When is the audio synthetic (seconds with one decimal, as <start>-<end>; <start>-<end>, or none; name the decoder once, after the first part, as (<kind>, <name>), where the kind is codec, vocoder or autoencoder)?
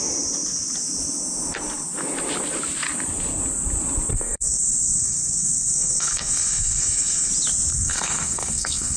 4.1-7.3 (codec, SNAC); 7.7-9.0